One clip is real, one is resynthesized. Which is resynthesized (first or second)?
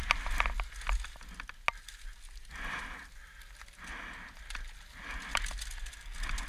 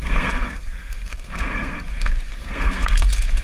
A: second